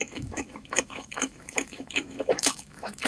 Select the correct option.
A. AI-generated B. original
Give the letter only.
A